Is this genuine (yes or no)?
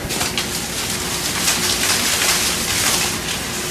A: yes